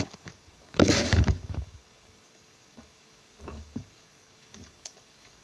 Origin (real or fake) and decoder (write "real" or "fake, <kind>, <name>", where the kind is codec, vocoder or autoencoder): fake, codec, DAC